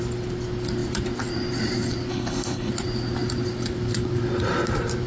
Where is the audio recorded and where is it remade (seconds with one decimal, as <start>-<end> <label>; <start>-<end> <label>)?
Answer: 0.0-2.1 recorded; 2.1-2.7 remade; 2.7-5.1 recorded